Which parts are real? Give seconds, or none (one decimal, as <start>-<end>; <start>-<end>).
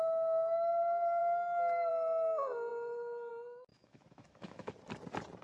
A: 0.0-3.7; 4.7-5.4